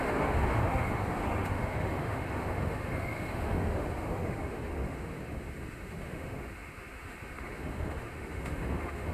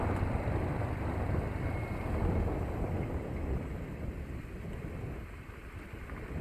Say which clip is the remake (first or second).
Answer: first